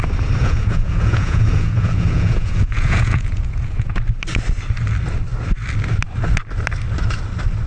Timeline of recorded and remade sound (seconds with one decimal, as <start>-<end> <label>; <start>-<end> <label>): 0.0-0.4 recorded; 0.4-3.9 remade; 3.9-7.7 recorded